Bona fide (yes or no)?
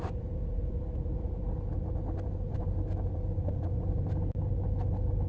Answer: yes